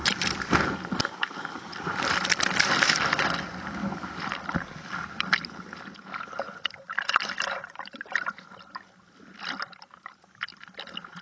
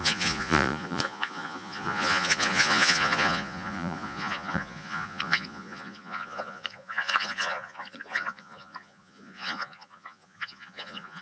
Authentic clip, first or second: first